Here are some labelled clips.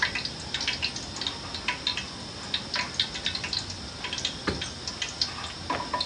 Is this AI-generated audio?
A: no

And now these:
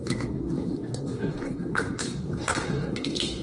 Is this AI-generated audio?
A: yes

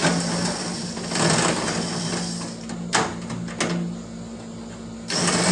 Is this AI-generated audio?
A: no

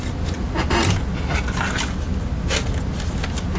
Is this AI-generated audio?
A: no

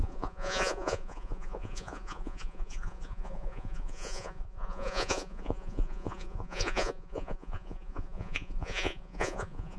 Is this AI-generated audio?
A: yes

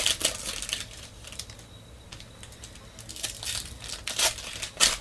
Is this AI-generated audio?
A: no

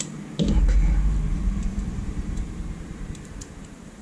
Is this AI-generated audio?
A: yes